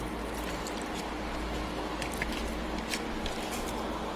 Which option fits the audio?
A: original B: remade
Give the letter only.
A